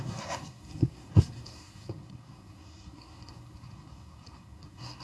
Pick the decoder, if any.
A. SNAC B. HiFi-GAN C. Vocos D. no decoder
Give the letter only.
A